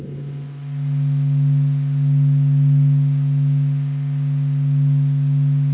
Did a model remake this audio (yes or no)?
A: no